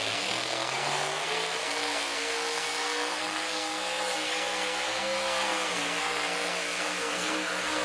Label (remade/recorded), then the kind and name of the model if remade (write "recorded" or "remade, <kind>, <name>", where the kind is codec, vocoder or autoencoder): remade, codec, SNAC